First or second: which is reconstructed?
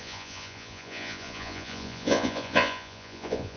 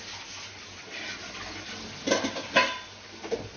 first